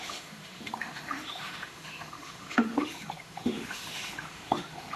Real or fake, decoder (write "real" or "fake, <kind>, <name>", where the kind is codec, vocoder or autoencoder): fake, autoencoder, DAC-VAE